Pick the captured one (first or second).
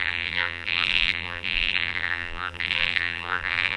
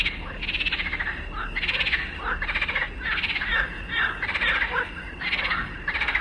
second